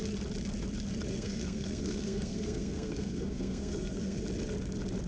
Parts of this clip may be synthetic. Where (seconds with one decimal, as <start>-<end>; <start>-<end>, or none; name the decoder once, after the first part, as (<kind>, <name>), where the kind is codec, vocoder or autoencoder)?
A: 1.1-4.2 (codec, SNAC)